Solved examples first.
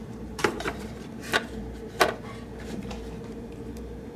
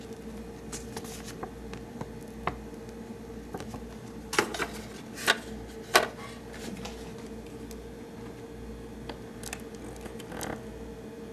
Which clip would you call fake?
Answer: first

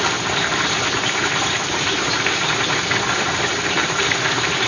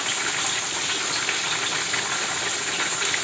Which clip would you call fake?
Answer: first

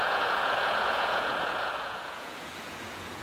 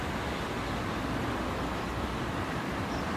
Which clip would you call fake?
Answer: first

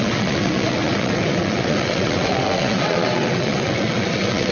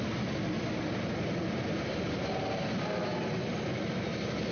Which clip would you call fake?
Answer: first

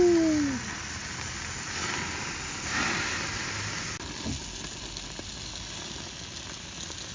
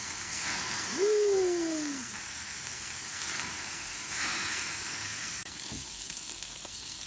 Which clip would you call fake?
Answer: second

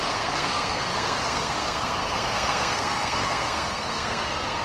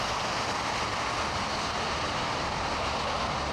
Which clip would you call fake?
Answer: first